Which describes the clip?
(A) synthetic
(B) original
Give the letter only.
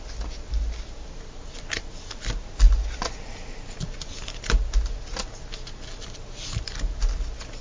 B